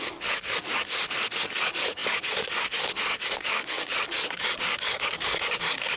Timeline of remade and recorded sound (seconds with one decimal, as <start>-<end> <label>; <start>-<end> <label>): 0.0-6.0 remade

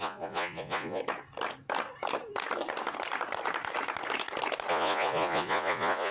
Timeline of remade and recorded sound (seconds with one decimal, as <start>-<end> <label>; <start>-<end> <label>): 0.0-1.0 remade; 1.0-4.7 recorded; 4.7-6.1 remade

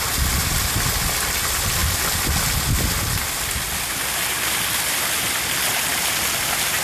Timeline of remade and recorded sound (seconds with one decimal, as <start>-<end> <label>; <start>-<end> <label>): 0.0-5.9 recorded; 5.9-6.8 remade

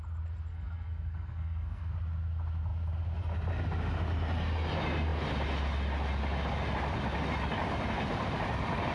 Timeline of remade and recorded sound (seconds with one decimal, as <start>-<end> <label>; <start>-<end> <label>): 0.0-0.5 recorded; 0.5-1.9 remade; 1.9-8.9 recorded

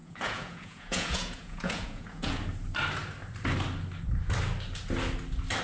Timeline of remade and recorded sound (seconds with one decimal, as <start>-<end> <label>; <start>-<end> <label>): 0.0-2.3 remade; 2.3-5.6 recorded